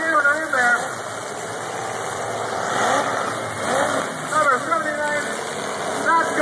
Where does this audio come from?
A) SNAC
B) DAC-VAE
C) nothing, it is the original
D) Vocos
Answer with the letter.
C